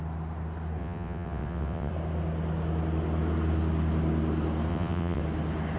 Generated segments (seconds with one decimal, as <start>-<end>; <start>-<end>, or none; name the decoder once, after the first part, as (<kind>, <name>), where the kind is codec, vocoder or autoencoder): 0.8-1.9 (vocoder, WaveNeXt); 4.7-5.2